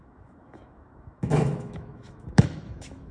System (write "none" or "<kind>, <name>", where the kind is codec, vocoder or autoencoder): autoencoder, DAC-VAE